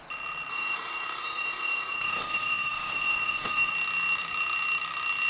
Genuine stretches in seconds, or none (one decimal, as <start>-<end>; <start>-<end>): 0.0-0.5; 3.7-5.3